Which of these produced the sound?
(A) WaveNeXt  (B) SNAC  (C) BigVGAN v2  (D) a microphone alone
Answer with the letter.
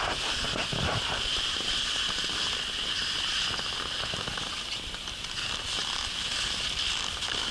D